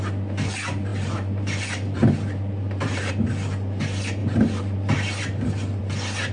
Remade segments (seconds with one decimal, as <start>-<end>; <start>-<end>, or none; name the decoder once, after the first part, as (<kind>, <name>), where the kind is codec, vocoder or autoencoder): 0.9-3.1 (vocoder, BigVGAN v2); 4.2-5.8